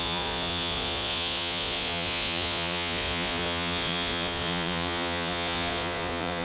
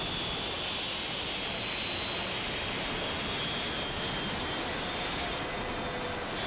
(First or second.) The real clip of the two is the second